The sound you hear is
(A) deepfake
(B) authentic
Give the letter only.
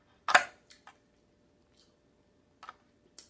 B